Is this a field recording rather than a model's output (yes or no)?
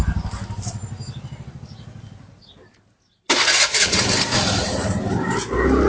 yes